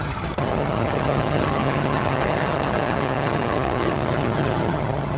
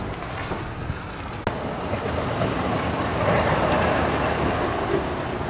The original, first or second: second